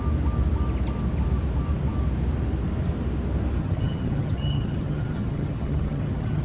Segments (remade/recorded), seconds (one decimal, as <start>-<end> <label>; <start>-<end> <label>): 0.0-3.6 recorded; 3.6-6.4 remade